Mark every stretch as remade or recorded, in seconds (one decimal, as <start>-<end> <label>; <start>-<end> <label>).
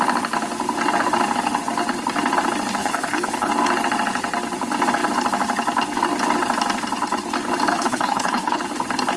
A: 0.0-2.8 recorded; 2.8-3.5 remade; 3.5-7.7 recorded; 7.7-8.6 remade; 8.6-9.2 recorded